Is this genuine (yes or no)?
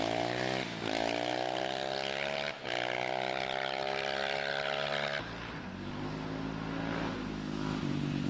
yes